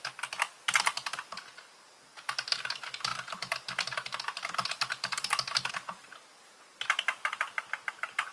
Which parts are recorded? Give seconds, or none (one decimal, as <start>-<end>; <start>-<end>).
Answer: 0.0-8.3